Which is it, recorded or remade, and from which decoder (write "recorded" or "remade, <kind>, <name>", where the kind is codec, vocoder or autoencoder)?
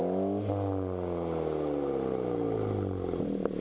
recorded